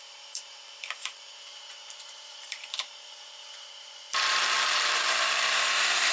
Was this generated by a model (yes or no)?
yes